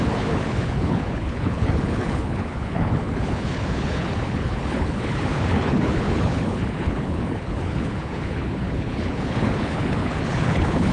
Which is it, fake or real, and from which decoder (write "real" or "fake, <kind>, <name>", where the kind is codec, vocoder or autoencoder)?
fake, codec, HILCodec